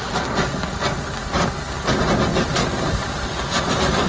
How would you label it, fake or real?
real